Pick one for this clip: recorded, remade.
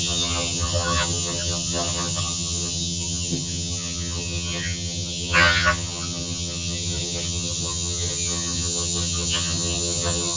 remade